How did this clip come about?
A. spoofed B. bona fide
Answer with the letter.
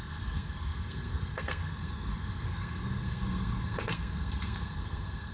A